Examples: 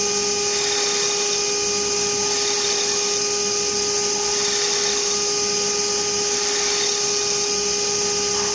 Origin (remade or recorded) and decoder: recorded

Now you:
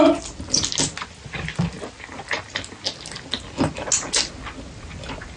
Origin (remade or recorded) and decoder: recorded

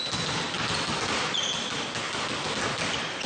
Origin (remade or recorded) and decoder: recorded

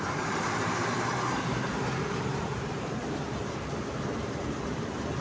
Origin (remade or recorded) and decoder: remade, vocoder, BigVGAN v2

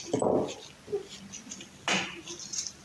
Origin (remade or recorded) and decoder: recorded